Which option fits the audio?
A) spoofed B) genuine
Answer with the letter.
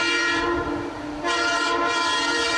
A